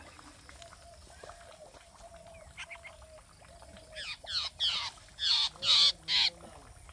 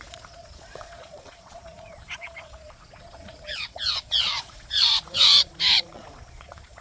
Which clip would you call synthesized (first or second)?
second